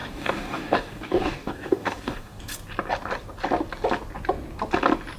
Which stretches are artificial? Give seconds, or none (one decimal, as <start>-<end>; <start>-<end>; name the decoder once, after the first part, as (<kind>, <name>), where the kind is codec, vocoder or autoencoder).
0.0-2.4 (codec, DAC)